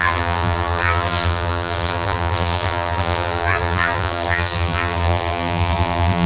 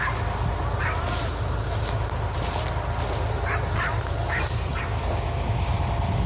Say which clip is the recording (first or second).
second